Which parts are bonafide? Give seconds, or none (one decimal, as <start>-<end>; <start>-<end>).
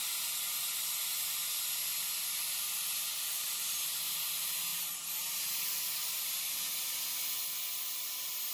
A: 0.0-2.8; 3.8-8.5